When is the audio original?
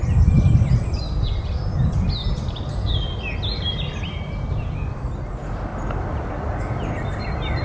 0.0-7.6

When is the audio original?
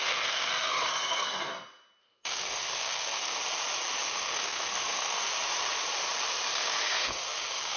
1.5-2.0; 3.4-4.1; 5.3-6.5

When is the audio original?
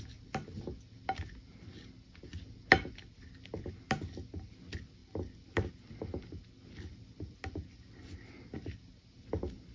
0.0-9.7